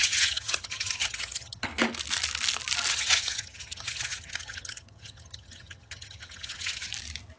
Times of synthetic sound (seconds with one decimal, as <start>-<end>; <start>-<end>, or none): 0.0-1.7; 2.9-6.9